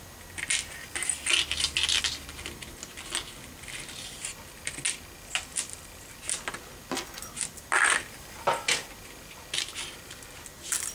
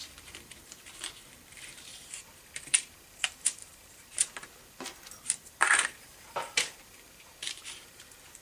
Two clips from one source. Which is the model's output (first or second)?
second